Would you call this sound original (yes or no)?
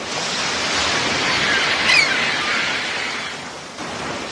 yes